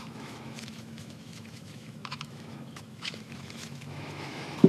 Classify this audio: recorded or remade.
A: remade